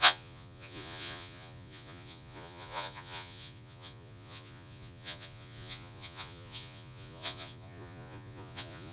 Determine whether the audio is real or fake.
fake